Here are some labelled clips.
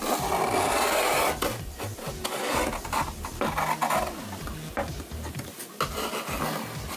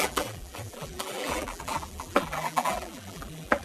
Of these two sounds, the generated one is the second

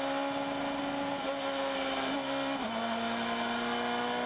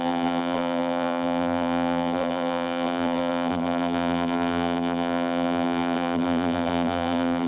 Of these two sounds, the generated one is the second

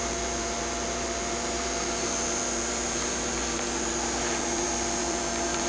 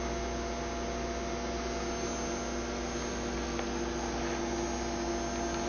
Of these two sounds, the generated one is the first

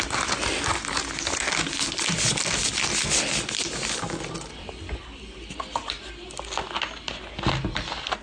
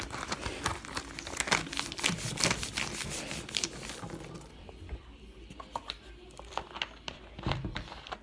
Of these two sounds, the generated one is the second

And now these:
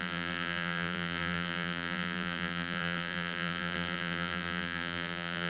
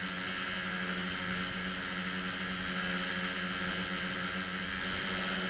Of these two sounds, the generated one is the first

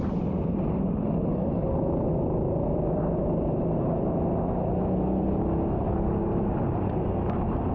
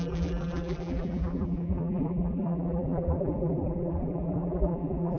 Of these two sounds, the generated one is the second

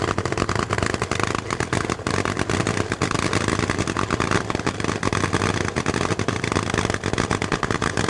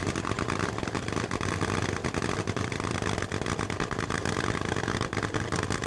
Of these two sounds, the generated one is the second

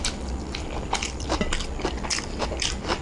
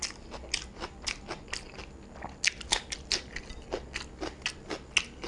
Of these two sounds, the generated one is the first